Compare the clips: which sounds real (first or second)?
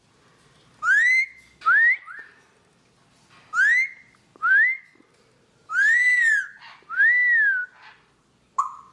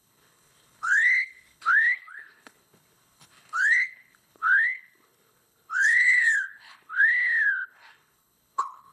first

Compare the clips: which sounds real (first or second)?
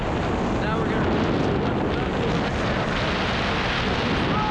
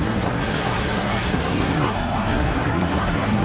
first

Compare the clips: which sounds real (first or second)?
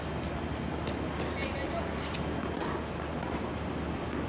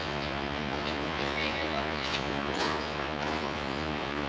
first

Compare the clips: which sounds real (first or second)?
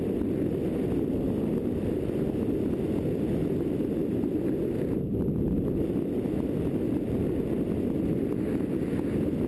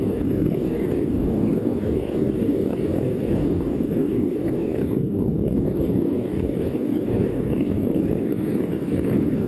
first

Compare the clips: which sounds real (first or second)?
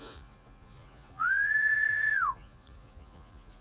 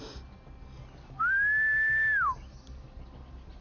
second